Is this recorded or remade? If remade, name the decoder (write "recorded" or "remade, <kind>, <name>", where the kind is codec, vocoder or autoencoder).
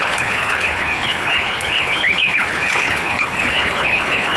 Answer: remade, codec, HILCodec